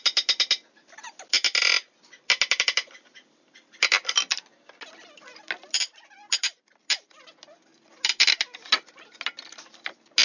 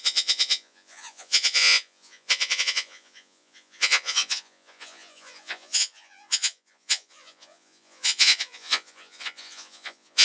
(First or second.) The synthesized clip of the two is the second